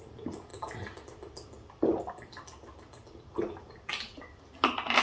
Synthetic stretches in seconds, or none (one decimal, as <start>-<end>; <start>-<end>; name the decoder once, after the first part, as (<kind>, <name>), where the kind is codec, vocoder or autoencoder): none

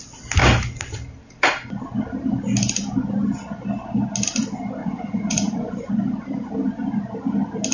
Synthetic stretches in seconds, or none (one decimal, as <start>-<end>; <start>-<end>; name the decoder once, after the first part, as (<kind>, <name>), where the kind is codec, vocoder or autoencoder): 4.8-5.9 (vocoder, Vocos)